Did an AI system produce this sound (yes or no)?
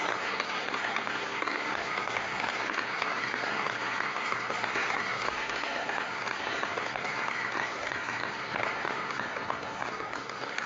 yes